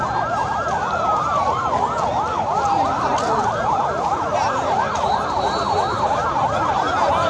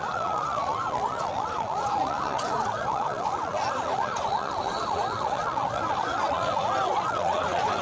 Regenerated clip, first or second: second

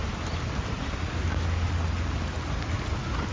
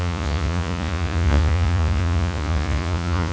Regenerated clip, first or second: second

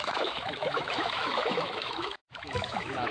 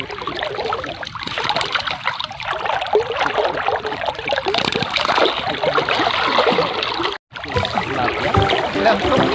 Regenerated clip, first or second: first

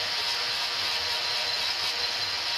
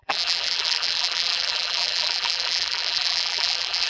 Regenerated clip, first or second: second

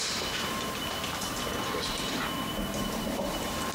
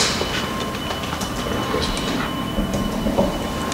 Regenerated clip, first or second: first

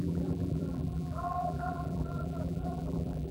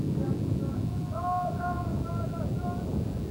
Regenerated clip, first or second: first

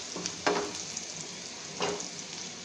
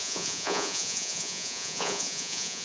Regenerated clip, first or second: second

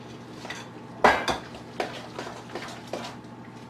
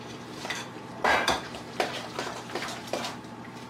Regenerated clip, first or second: second